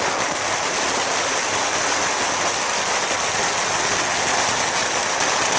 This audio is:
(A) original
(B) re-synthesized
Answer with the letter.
A